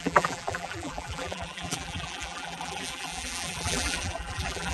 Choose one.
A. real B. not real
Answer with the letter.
B